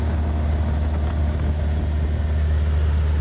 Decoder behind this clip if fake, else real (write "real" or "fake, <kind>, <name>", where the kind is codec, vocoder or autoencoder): real